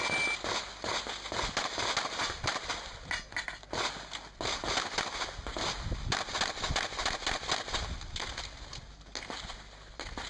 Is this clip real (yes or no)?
yes